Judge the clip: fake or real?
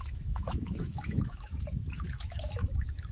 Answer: fake